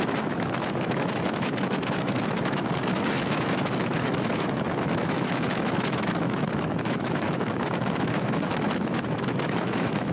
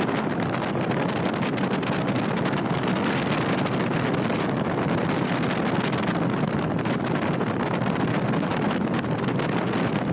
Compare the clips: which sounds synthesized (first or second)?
first